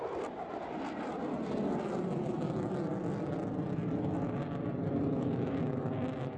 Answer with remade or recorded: recorded